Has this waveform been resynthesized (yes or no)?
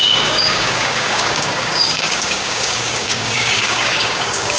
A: yes